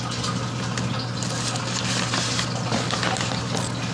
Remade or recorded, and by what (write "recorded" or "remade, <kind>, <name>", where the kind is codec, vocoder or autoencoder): recorded